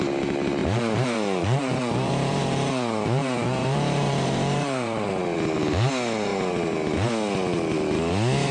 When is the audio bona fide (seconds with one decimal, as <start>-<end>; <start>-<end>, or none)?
0.0-0.6; 5.1-8.5